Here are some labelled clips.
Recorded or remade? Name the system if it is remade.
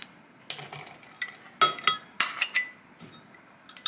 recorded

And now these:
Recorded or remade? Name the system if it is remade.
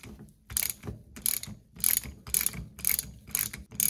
recorded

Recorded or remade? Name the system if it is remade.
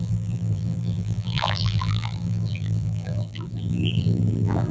remade, vocoder, BigVGAN v2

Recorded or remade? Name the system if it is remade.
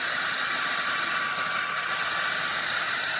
recorded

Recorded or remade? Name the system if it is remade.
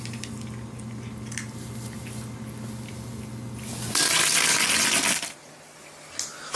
recorded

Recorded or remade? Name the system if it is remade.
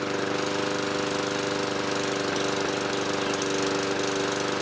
recorded